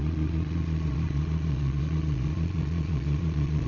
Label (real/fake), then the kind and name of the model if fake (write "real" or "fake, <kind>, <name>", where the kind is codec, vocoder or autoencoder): fake, vocoder, Vocos